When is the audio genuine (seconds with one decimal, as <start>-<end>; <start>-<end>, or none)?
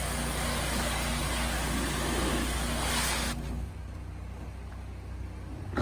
0.0-5.8